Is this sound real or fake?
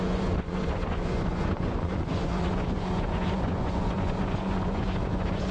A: fake